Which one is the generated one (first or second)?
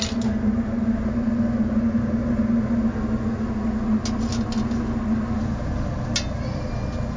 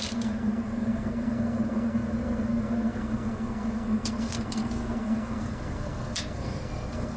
second